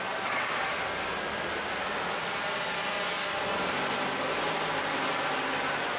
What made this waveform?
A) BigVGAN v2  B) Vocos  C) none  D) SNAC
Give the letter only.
C